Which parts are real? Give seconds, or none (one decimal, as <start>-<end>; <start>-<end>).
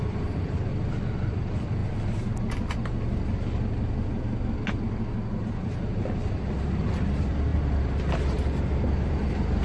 0.7-1.3; 1.8-5.4